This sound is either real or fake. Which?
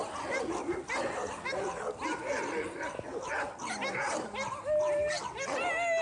real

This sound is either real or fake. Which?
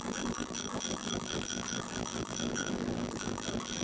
fake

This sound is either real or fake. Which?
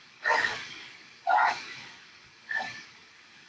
fake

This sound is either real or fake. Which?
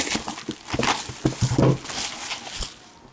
real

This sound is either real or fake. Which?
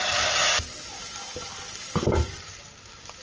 real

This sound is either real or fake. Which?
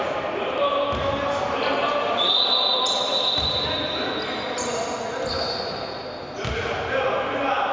real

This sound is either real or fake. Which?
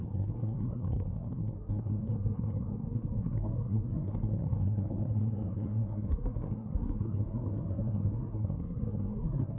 fake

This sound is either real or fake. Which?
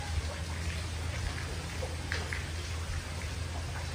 real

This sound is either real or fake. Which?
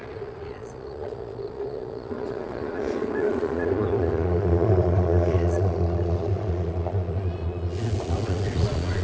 fake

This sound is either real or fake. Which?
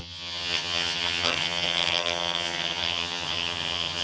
fake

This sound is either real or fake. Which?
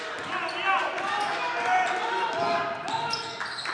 real